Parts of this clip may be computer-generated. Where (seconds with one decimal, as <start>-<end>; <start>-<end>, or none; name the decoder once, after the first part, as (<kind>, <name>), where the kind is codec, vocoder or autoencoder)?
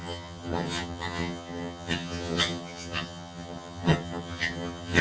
0.0-5.0 (vocoder, HiFi-GAN)